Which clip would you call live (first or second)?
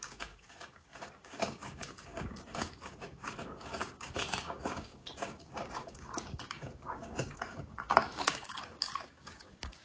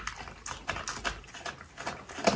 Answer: second